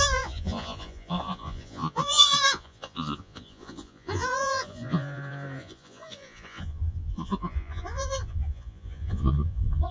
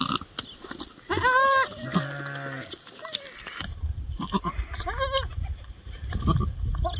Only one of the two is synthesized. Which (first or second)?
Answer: first